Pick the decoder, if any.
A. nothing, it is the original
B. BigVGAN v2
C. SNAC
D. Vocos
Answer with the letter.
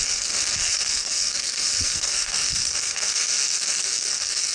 C